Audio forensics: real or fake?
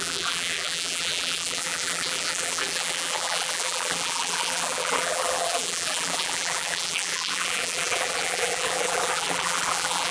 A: fake